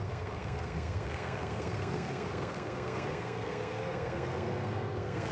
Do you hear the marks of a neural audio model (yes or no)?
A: yes